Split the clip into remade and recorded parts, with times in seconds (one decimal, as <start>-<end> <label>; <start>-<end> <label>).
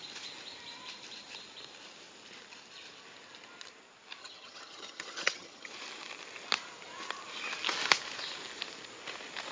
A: 0.0-4.2 recorded; 4.2-5.7 remade; 5.7-9.5 recorded